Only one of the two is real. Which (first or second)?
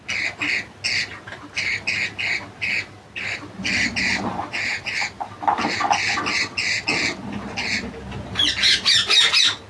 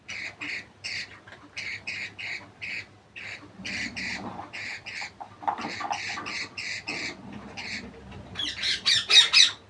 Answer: first